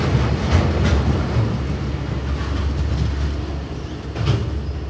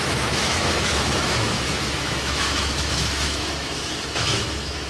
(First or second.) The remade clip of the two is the second